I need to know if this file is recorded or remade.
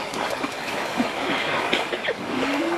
remade